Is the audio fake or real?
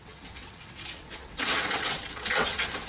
fake